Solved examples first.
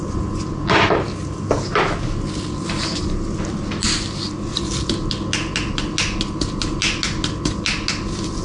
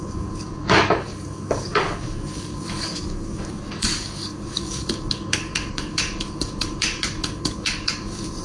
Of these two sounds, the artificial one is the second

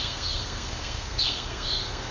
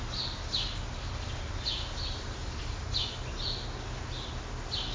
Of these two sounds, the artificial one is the first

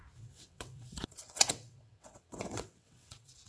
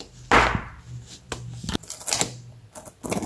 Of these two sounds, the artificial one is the first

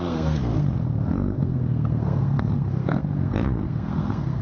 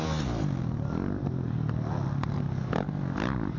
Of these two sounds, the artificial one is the first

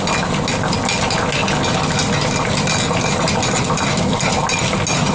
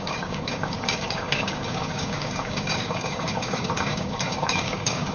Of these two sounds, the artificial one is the second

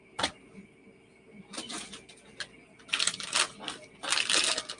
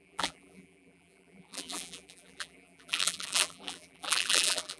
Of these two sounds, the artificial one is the second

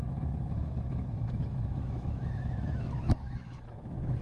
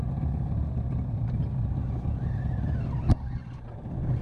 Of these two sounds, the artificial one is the first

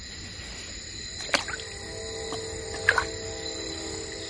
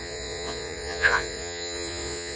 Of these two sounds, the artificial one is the second